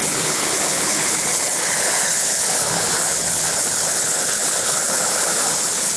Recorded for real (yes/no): no